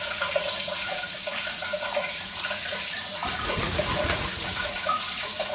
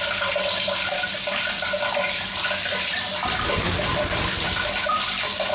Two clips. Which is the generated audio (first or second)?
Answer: first